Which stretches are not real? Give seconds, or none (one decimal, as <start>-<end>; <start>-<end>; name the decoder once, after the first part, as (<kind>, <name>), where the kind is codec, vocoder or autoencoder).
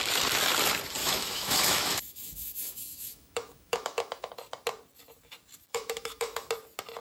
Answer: 1.0-4.3 (autoencoder, DAC-VAE); 5.7-6.5